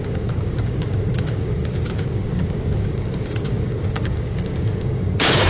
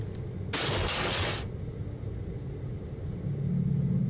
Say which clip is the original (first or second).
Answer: second